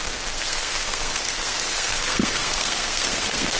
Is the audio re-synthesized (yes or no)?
yes